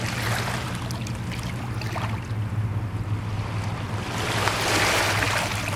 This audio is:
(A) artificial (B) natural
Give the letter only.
B